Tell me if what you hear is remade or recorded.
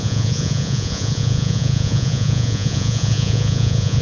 remade